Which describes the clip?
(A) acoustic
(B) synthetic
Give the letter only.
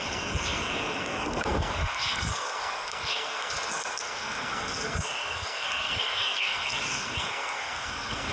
B